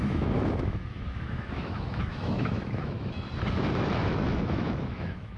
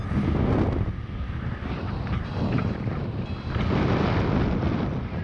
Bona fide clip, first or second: second